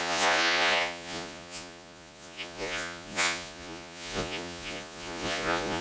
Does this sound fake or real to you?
fake